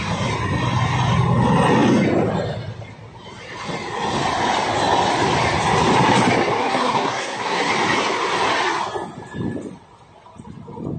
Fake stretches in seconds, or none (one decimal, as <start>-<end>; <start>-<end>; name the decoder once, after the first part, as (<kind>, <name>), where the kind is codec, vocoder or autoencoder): 6.6-7.7 (codec, SNAC)